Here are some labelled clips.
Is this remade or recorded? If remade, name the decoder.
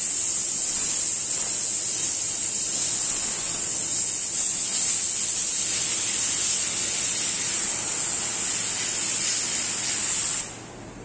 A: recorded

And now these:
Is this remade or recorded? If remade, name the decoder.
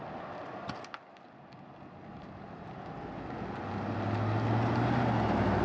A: recorded